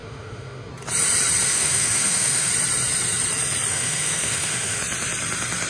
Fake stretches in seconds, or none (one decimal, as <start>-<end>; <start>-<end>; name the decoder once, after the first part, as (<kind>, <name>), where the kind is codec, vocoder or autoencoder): 0.0-0.7 (autoencoder, DAC-VAE); 1.5-2.5; 3.7-4.8